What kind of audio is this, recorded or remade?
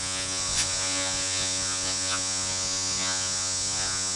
remade